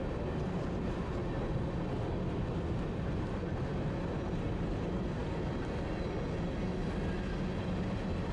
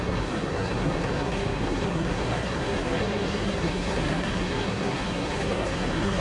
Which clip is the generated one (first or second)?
second